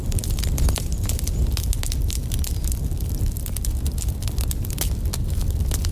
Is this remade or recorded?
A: recorded